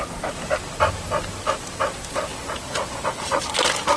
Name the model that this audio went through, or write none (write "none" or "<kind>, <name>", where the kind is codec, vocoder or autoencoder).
none